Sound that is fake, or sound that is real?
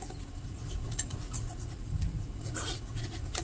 fake